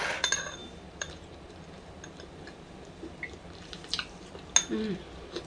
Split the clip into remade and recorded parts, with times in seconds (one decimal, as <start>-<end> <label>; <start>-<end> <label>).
0.0-0.6 recorded; 0.6-1.9 remade; 1.9-3.4 recorded; 3.4-4.3 remade; 4.3-5.5 recorded